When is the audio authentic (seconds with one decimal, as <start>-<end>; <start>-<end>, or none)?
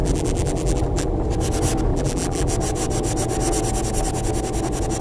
1.1-1.9; 2.5-5.0